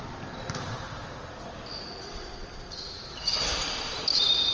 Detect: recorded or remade recorded